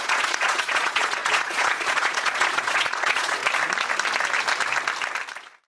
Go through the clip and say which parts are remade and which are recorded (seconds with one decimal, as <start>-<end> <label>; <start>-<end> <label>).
0.0-3.4 remade; 3.4-5.7 recorded